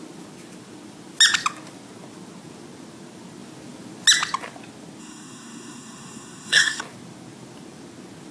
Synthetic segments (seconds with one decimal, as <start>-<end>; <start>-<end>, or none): 5.0-6.8